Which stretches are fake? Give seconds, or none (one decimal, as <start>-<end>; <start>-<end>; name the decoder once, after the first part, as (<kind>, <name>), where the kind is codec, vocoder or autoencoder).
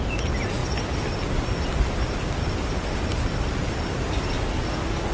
none